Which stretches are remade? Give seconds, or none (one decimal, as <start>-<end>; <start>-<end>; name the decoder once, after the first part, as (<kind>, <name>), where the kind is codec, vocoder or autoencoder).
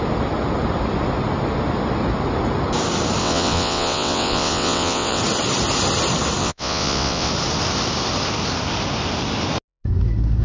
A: 3.2-5.2 (vocoder, WaveNeXt); 6.4-7.3